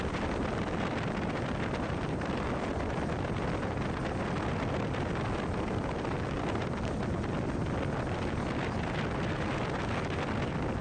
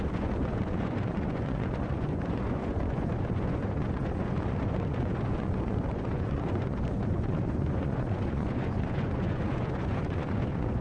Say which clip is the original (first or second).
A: first